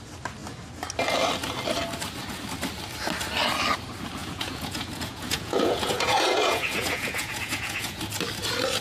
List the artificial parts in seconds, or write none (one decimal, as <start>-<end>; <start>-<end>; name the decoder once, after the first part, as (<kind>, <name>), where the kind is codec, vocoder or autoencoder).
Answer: 4.2-8.0 (vocoder, Vocos)